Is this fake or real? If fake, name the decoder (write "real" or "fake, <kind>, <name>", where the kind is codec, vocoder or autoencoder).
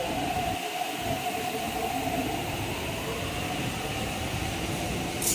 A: fake, vocoder, BigVGAN v2